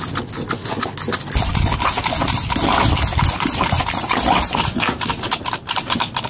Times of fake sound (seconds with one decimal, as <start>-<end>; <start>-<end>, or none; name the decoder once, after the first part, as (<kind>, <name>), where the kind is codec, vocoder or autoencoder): none

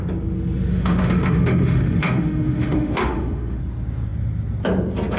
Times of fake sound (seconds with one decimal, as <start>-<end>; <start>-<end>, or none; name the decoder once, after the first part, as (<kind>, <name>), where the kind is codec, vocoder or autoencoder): 0.7-3.6 (autoencoder, DAC-VAE)

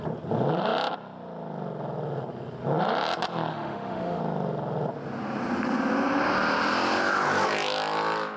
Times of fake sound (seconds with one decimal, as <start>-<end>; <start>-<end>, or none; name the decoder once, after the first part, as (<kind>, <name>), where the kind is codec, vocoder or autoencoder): 3.5-4.2 (autoencoder, DAC-VAE)

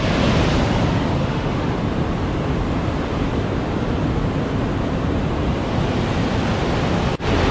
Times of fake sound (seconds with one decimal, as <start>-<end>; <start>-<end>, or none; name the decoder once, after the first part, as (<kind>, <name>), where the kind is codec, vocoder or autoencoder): 1.2-1.7 (autoencoder, DAC-VAE)

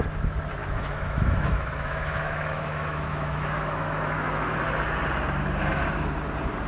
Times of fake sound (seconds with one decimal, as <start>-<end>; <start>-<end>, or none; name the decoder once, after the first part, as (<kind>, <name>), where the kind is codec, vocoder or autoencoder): 0.6-4.6 (autoencoder, DAC-VAE)

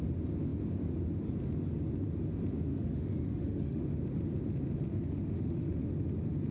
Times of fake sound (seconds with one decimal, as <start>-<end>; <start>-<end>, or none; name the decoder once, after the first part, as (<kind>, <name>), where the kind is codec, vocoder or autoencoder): 2.7-3.8 (autoencoder, DAC-VAE); 4.9-5.9

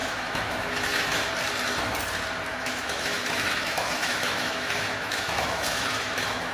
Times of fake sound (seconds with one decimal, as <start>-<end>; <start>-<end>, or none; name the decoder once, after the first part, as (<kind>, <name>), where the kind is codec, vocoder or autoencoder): 0.0-1.3 (autoencoder, DAC-VAE); 2.5-6.5

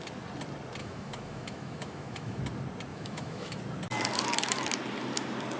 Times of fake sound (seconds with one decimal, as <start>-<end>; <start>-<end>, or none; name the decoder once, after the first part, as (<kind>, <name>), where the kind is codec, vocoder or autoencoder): 0.8-2.4 (autoencoder, DAC-VAE); 2.9-3.6